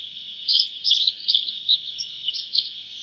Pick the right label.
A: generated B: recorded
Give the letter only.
A